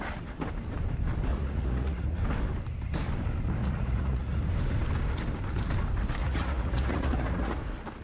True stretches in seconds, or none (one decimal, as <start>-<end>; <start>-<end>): 0.0-1.3; 2.2-3.6; 4.4-6.2; 7.6-8.0